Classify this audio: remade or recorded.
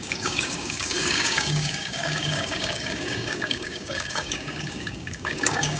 remade